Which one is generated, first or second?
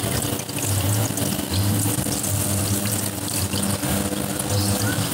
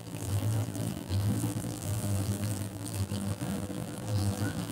second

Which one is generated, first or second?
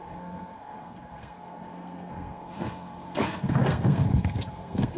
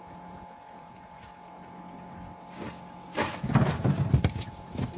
first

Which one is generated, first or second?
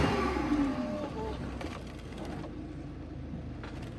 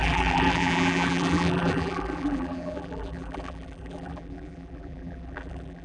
second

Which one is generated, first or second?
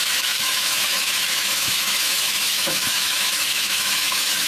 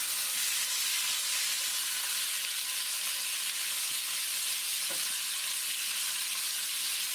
first